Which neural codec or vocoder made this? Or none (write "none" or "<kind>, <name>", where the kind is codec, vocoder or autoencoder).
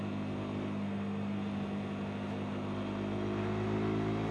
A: none